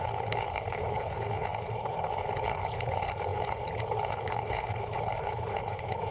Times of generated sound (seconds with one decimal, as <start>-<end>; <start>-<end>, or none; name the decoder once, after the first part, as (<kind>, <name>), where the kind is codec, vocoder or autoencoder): 0.0-6.1 (codec, HILCodec)